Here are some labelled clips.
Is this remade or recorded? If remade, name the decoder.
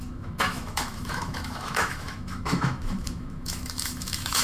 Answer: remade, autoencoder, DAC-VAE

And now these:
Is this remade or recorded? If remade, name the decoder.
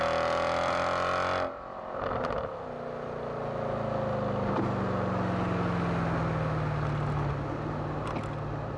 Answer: recorded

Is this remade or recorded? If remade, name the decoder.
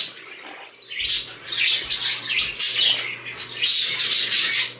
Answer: recorded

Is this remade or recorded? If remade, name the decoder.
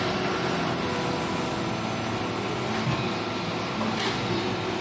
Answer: recorded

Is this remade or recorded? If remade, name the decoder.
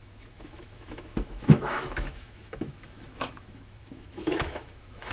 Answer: remade, autoencoder, DAC-VAE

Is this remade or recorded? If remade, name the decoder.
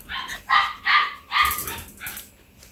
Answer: recorded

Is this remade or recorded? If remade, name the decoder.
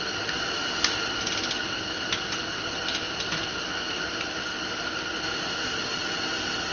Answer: recorded